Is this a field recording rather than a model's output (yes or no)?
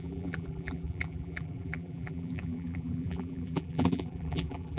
no